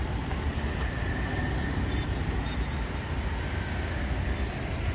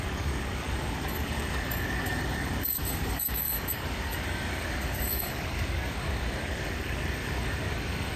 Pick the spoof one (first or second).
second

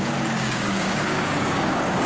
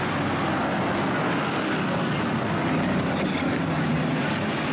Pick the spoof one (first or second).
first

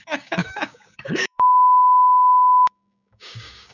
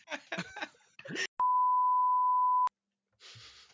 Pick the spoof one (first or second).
first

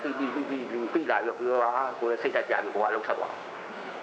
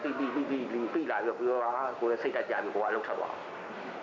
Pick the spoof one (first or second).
first